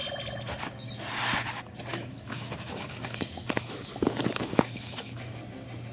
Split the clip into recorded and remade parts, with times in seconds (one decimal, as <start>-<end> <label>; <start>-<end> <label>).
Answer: 0.0-1.9 recorded; 1.9-5.4 remade; 5.4-5.9 recorded